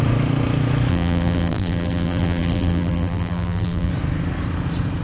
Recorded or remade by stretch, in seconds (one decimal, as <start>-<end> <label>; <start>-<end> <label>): 0.0-0.9 recorded; 0.9-3.9 remade; 3.9-5.0 recorded